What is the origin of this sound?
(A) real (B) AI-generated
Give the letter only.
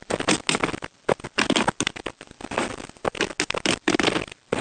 A